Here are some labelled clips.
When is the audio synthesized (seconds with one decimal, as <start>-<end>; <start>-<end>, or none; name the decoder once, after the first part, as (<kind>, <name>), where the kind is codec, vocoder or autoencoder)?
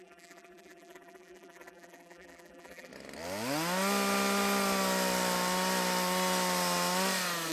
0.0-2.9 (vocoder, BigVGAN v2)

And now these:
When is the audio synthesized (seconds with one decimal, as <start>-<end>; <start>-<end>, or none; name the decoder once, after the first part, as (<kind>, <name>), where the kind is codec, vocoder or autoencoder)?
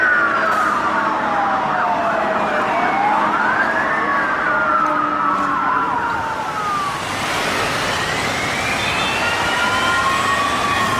4.1-4.8 (vocoder, BigVGAN v2)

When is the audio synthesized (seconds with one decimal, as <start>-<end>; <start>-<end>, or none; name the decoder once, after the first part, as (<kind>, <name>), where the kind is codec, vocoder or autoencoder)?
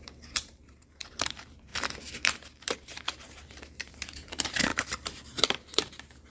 0.0-1.7 (vocoder, BigVGAN v2); 2.3-6.3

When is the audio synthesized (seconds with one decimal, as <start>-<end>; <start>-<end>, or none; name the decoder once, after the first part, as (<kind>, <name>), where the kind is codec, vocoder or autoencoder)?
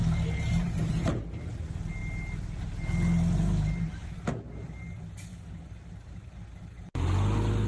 none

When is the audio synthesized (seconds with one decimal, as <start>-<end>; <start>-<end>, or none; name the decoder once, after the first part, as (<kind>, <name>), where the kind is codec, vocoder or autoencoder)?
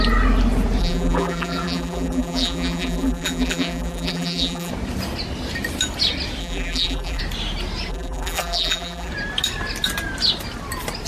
0.8-4.7 (vocoder, BigVGAN v2); 6.4-7.2; 7.9-9.1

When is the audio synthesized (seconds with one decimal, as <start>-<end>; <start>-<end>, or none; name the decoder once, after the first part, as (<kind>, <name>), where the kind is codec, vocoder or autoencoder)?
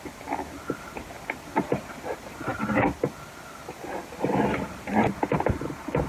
none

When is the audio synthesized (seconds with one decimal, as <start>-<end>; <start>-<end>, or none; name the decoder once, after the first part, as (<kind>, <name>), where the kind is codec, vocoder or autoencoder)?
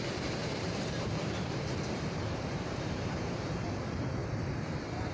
0.4-3.5 (vocoder, BigVGAN v2); 4.2-5.1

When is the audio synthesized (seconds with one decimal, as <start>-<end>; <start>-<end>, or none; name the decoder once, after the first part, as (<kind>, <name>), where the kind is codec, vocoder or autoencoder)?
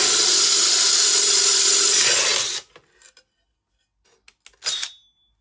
none